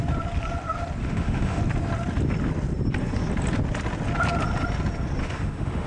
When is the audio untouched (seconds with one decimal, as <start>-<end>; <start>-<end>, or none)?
0.0-1.0; 1.6-5.2